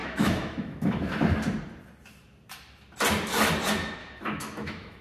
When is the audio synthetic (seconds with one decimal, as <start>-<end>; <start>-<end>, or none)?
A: 0.0-1.1; 4.0-5.0